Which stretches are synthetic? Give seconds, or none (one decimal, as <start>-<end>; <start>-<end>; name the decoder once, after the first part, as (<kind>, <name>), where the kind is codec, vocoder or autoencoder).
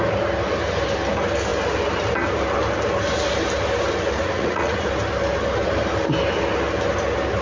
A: 4.2-4.9 (vocoder, Vocos)